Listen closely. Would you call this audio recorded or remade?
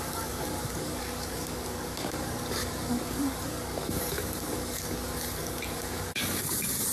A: remade